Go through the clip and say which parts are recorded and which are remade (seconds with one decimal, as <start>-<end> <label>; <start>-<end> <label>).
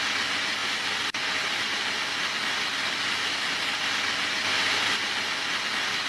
0.0-6.1 recorded